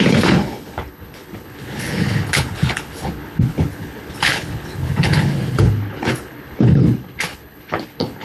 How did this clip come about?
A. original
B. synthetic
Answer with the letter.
B